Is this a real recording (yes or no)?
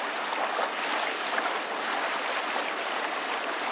yes